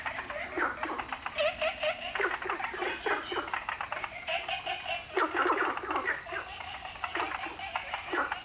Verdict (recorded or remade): recorded